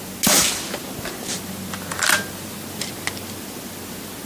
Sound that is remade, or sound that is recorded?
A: recorded